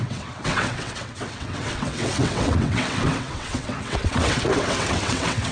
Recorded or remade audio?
remade